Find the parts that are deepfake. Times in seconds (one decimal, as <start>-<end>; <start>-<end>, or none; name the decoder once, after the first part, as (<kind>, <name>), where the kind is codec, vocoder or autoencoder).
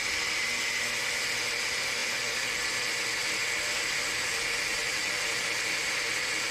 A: none